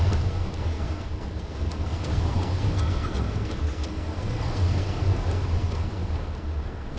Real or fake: fake